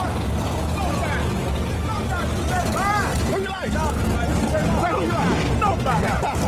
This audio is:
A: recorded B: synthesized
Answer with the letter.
A